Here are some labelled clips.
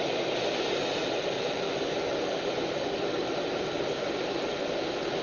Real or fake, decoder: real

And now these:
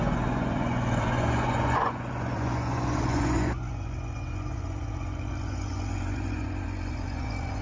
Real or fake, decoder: fake, vocoder, Vocos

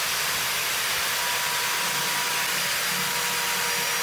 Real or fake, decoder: real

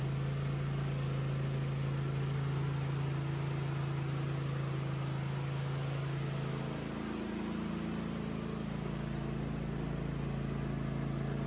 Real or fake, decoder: real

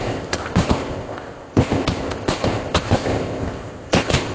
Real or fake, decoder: fake, codec, ZipCodec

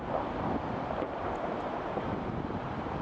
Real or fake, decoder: real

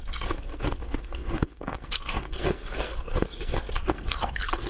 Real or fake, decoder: fake, codec, SNAC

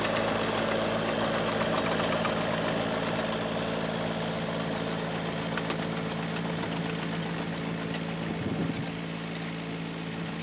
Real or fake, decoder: real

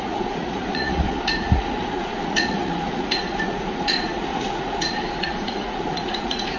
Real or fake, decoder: fake, vocoder, Vocos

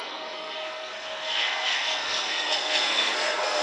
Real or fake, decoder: fake, codec, SNAC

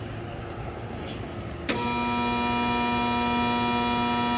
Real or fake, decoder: real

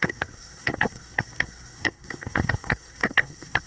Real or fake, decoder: fake, codec, SNAC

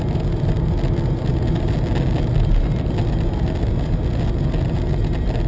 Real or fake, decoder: real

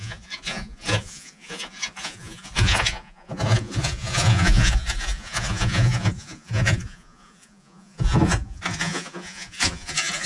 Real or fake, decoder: fake, vocoder, Vocos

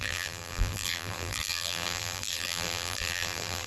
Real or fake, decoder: fake, vocoder, BigVGAN v2